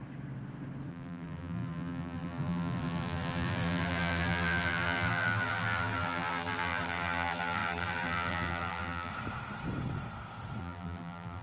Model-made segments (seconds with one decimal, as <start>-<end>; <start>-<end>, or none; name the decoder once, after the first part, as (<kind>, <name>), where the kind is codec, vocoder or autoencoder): 0.9-9.1 (vocoder, BigVGAN v2); 10.6-11.4